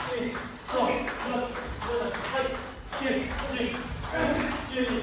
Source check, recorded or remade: recorded